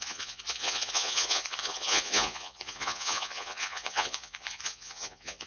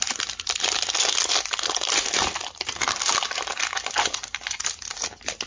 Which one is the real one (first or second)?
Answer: second